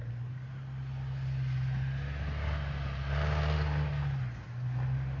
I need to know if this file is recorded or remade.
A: recorded